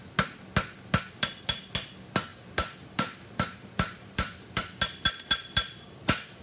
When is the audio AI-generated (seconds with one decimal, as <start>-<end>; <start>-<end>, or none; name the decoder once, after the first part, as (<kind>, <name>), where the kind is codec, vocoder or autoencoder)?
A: 2.3-4.8 (vocoder, BigVGAN v2)